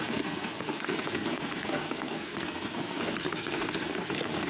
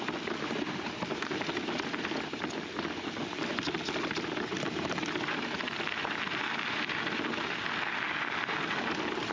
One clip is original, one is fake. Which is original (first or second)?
second